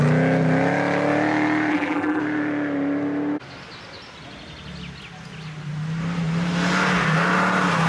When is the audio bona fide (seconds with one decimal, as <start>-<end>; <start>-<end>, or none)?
0.0-1.7; 2.2-7.9

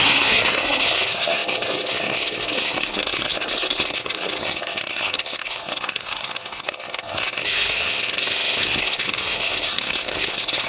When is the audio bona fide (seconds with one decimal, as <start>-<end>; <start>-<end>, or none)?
none

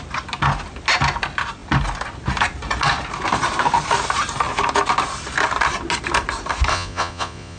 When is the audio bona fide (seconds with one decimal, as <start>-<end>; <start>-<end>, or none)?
0.0-6.7

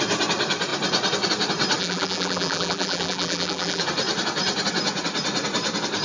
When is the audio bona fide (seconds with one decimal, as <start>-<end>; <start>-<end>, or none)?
0.0-1.8; 3.8-6.0

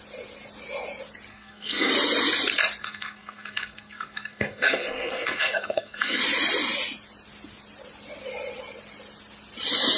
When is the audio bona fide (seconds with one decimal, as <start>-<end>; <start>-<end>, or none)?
0.0-1.3; 1.9-2.8; 6.2-10.0